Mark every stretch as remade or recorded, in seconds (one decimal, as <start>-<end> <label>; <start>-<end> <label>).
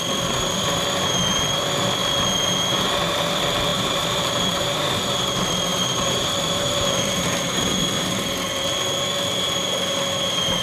0.0-2.0 recorded; 2.0-2.8 remade; 2.8-3.7 recorded; 3.7-4.9 remade; 4.9-5.7 recorded; 5.7-8.2 remade; 8.2-10.6 recorded